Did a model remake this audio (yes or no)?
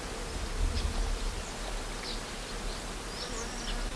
no